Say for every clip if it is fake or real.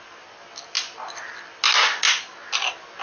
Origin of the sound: real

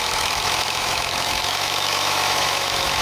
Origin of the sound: fake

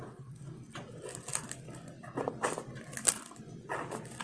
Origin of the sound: real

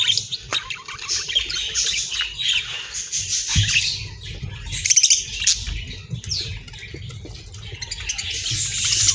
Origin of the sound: real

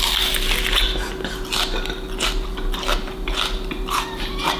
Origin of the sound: real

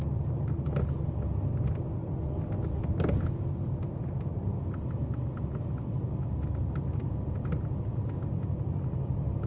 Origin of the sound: real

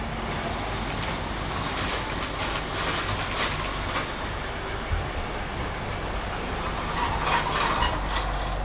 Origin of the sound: real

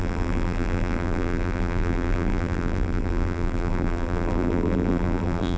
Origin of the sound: fake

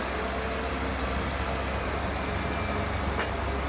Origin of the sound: real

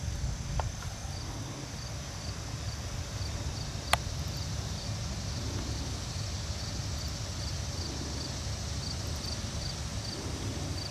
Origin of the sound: real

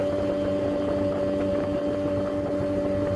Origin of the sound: real